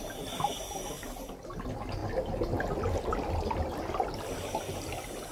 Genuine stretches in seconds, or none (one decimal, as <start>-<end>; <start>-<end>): 0.0-5.3